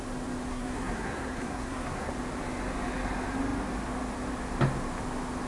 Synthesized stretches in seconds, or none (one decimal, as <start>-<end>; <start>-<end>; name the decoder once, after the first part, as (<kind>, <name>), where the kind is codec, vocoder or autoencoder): 0.5-2.1 (codec, SNAC)